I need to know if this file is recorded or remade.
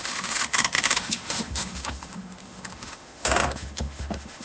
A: remade